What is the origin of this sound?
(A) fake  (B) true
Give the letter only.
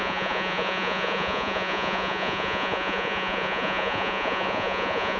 A